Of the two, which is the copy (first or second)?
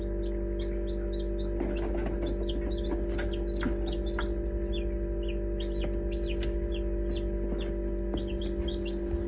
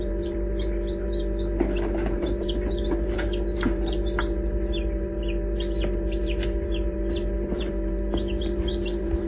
second